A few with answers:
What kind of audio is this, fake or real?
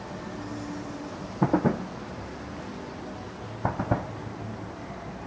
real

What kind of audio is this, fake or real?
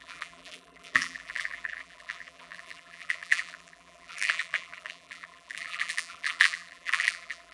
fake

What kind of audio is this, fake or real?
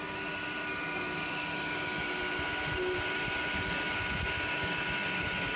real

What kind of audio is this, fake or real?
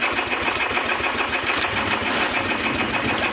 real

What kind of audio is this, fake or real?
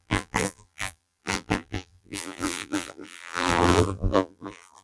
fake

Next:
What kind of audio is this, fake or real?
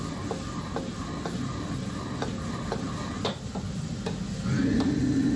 real